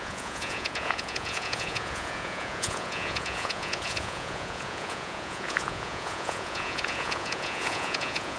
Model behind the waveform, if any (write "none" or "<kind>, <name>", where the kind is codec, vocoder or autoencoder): vocoder, Vocos